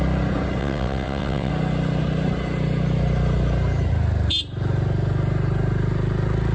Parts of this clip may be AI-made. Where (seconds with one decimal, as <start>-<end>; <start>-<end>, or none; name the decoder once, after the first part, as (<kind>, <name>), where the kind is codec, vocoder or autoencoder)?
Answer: 0.6-1.5 (vocoder, WaveNeXt)